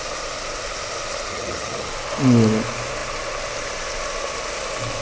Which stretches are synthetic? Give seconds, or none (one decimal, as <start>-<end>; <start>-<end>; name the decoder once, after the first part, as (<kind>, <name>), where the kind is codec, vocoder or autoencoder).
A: 1.3-1.9 (vocoder, HiFi-GAN)